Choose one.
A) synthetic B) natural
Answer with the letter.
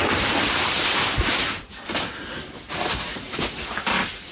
B